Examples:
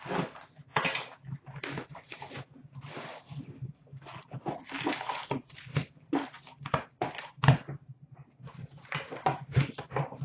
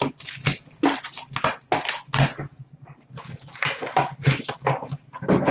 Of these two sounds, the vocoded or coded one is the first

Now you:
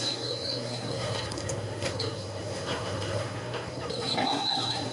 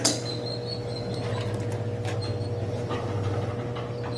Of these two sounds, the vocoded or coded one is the first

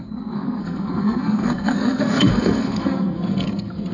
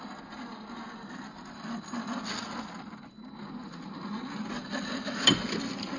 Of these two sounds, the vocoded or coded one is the first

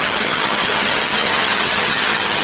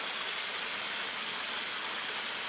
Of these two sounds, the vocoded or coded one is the first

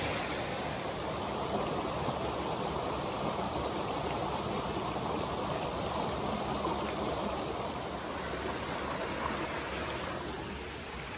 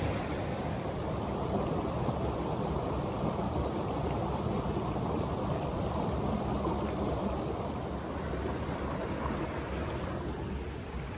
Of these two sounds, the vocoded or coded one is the second